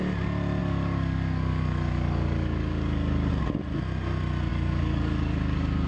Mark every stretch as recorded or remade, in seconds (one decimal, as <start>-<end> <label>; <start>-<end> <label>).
0.0-0.6 recorded; 0.6-3.3 remade; 3.3-4.5 recorded; 4.5-5.9 remade